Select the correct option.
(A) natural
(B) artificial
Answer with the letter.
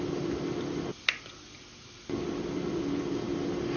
A